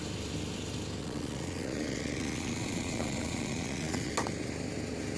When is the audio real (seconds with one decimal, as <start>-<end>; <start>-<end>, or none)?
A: 0.0-1.0; 4.1-5.2